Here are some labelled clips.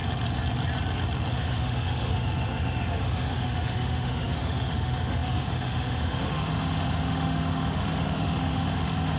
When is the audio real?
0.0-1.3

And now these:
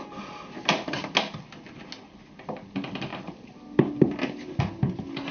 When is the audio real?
0.0-5.3